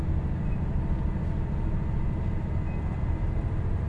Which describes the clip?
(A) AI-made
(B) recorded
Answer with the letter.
B